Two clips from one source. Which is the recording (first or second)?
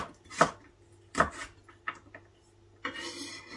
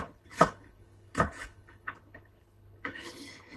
first